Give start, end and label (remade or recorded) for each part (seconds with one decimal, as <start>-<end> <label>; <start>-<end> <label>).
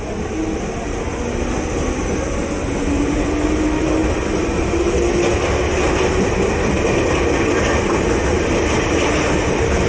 0.0-9.9 recorded